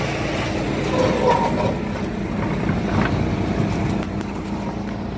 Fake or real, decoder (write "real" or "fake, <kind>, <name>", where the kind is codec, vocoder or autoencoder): real